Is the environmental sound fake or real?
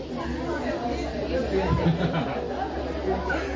real